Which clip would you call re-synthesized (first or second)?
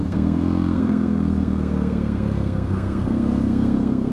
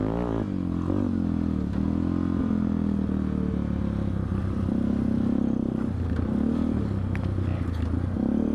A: first